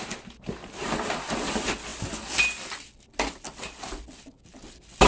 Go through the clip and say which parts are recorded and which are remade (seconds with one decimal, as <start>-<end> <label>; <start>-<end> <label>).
0.0-5.1 recorded